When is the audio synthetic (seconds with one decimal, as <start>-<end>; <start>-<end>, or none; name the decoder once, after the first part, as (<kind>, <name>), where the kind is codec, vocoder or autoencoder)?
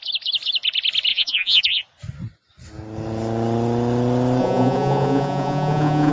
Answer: 1.1-1.6 (vocoder, Vocos); 4.4-6.1